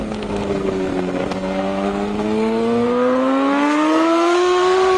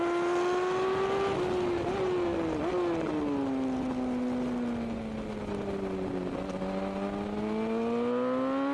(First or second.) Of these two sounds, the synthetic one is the first